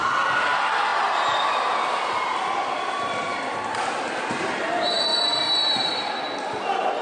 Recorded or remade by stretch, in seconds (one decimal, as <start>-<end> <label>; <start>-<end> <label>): 0.0-0.9 recorded; 0.9-4.6 remade; 4.6-5.1 recorded; 5.1-6.1 remade; 6.1-7.0 recorded